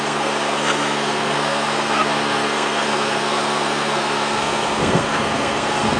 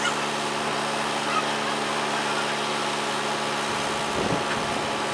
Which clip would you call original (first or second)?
second